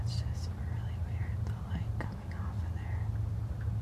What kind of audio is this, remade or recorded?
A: recorded